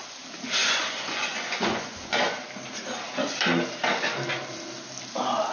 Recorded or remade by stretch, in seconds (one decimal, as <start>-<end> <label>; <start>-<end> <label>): 0.0-0.6 recorded; 0.6-2.4 remade; 2.4-5.5 recorded